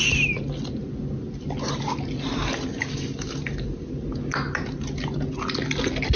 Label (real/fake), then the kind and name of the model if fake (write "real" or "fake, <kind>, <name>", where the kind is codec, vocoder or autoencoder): real